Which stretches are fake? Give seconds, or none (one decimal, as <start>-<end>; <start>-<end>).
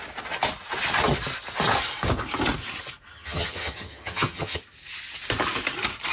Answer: 3.1-4.6